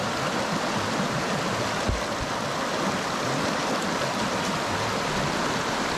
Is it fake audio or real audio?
real